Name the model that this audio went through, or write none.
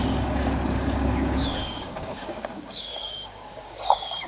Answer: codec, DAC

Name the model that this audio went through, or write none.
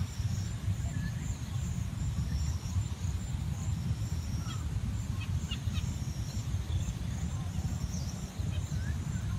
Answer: vocoder, BigVGAN v2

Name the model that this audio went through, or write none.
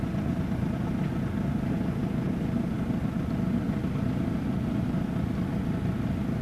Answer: none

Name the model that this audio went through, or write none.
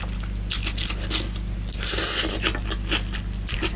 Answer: none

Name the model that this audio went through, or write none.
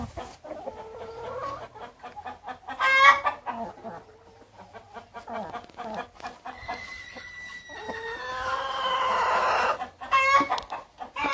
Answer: none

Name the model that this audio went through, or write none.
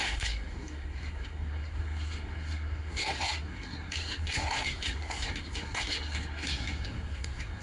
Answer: codec, SNAC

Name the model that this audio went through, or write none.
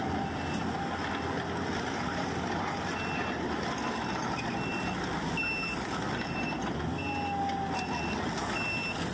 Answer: none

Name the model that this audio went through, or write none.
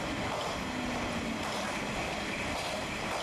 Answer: none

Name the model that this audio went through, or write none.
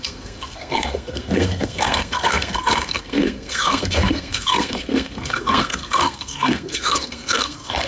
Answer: codec, SNAC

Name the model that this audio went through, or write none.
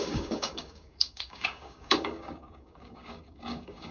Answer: codec, DAC